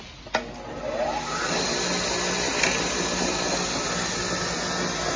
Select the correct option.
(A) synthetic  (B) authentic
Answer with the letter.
B